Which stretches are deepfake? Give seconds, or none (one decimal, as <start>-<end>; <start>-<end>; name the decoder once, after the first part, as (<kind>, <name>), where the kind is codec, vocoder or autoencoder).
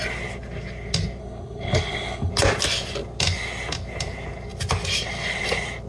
1.2-2.3 (codec, HILCodec)